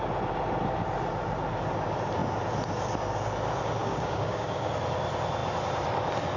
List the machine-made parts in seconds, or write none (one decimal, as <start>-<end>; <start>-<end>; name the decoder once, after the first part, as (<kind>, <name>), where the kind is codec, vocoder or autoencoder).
3.8-4.7 (codec, DAC)